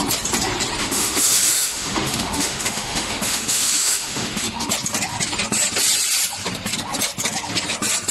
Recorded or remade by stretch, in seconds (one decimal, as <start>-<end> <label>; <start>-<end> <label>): 0.0-0.8 recorded; 0.8-4.7 remade; 4.7-8.1 recorded